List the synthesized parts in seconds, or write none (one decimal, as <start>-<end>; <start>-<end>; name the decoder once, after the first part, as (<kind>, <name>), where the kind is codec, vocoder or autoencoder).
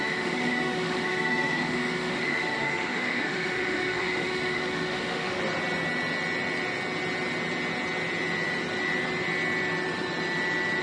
0.0-5.4 (autoencoder, DAC-VAE)